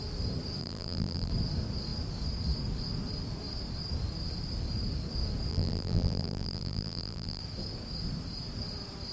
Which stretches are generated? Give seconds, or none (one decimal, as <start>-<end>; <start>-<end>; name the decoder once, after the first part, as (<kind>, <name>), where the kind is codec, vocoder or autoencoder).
0.6-1.3 (vocoder, BigVGAN v2); 5.5-7.4

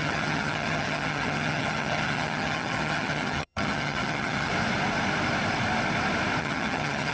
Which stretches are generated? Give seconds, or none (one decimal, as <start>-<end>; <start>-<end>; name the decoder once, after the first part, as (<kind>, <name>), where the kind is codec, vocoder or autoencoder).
0.0-4.5 (vocoder, HiFi-GAN); 6.4-7.1

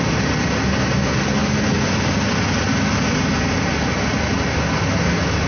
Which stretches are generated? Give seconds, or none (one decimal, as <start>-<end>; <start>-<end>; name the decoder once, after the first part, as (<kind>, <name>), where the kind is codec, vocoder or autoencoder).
none

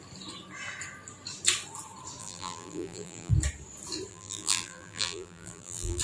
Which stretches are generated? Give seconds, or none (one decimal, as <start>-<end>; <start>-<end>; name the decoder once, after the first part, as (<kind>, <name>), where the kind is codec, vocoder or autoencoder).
2.2-3.3 (vocoder, BigVGAN v2); 4.1-6.0

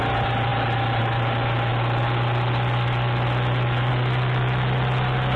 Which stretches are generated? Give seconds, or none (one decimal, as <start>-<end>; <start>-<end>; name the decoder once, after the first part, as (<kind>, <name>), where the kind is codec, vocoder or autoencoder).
none

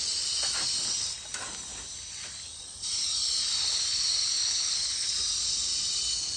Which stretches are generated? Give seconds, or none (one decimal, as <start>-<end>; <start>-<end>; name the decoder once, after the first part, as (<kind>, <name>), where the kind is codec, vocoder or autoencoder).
4.5-5.1 (codec, HILCodec)

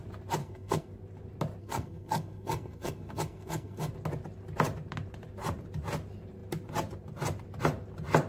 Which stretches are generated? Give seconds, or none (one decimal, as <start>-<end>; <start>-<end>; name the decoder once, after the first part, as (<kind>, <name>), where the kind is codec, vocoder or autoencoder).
0.4-0.9 (codec, SNAC); 1.6-3.9